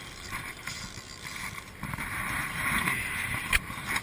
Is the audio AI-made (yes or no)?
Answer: yes